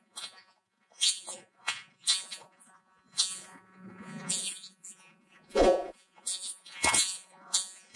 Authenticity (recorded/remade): remade